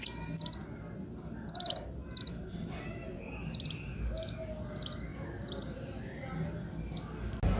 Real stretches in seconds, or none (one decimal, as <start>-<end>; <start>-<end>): 0.0-7.6